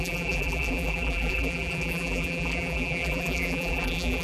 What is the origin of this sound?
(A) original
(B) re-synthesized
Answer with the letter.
B